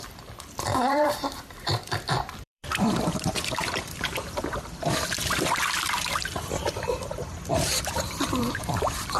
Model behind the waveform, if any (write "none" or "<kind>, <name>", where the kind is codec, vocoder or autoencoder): vocoder, BigVGAN v2